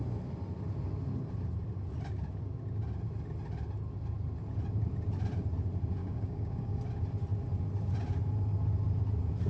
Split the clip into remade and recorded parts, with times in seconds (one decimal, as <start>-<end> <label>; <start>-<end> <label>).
0.0-6.0 recorded; 6.0-6.8 remade; 6.8-9.5 recorded